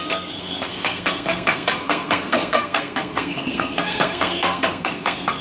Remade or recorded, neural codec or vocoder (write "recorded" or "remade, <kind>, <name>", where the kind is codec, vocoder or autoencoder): remade, codec, SNAC